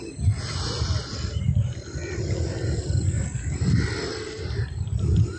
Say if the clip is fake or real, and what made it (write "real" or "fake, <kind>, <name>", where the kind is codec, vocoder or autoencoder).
real